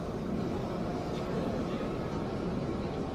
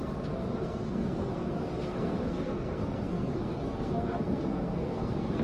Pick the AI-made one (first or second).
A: second